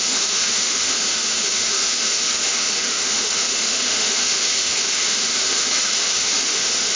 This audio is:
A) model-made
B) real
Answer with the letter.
A